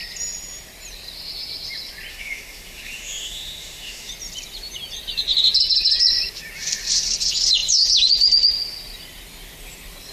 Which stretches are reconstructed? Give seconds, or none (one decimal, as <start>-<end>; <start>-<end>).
2.1-4.1